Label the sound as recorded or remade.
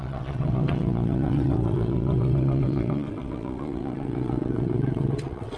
remade